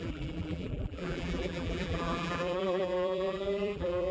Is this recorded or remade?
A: remade